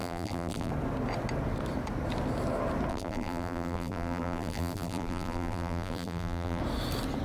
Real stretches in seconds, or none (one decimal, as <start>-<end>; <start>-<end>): 0.7-2.9; 6.6-7.2